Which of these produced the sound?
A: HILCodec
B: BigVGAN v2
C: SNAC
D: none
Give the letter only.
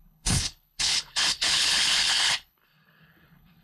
A